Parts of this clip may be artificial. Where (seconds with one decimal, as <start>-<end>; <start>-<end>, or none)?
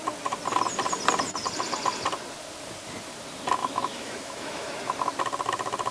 3.6-4.7